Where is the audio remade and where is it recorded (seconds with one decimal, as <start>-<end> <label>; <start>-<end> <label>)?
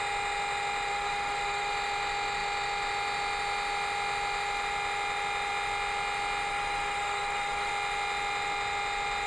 0.0-0.9 recorded; 0.9-1.7 remade; 1.7-6.5 recorded; 6.5-7.7 remade; 7.7-9.3 recorded